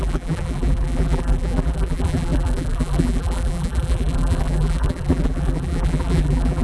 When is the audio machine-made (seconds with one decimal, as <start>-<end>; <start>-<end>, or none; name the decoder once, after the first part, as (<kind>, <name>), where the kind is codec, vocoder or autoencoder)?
0.0-6.6 (vocoder, BigVGAN v2)